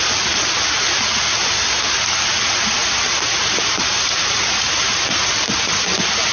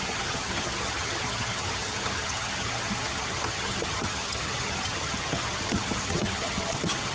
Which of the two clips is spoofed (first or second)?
second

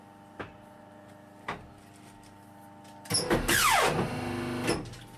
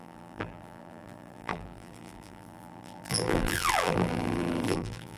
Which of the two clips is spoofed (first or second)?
second